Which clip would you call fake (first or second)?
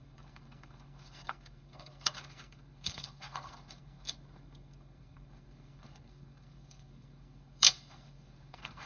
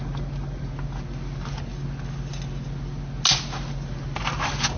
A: first